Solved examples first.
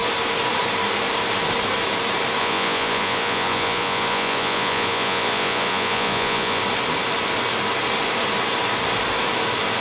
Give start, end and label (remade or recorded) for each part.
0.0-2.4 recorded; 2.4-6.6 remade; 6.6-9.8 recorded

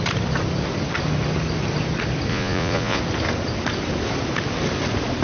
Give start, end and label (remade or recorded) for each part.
0.0-2.3 recorded; 2.3-3.0 remade; 3.0-5.2 recorded

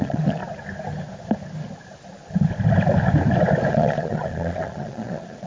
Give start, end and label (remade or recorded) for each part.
0.0-0.4 remade; 0.4-3.7 recorded; 3.7-5.5 remade

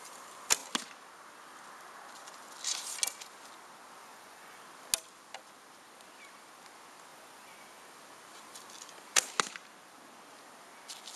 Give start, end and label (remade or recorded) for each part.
0.0-4.0 recorded; 4.0-4.6 remade; 4.6-7.1 recorded; 7.1-7.8 remade; 7.8-11.2 recorded

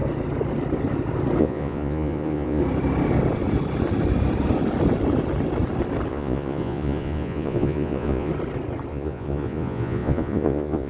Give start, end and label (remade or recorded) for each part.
0.0-1.4 recorded; 1.4-2.6 remade; 2.6-6.1 recorded; 6.1-8.3 remade; 8.3-8.9 recorded; 8.9-10.9 remade